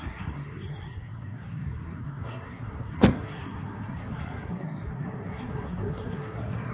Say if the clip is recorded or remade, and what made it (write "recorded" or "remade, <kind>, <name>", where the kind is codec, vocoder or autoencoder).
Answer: remade, codec, SNAC